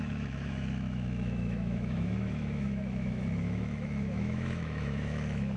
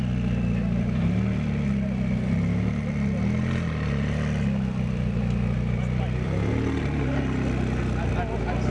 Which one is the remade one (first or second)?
first